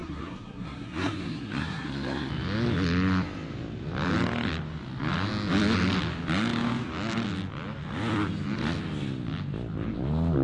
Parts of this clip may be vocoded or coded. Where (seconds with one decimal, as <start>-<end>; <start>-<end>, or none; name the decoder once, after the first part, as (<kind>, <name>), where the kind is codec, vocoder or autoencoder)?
0.0-2.3 (codec, SNAC)